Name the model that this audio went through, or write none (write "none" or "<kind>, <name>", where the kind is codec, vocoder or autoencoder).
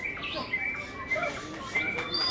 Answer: none